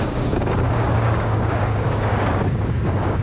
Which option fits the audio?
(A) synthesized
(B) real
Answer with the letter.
A